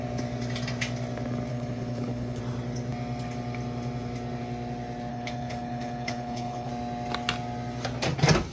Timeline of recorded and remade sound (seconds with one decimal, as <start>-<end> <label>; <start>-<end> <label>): 0.0-1.5 recorded; 1.5-2.4 remade; 2.4-5.1 recorded; 5.1-6.7 remade; 6.7-8.5 recorded